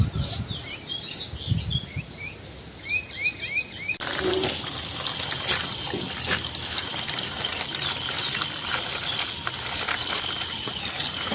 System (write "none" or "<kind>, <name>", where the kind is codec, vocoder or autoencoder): none